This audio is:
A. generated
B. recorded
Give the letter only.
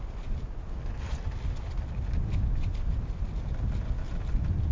B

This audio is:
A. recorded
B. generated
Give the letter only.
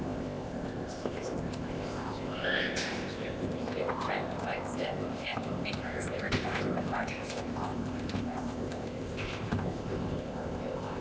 B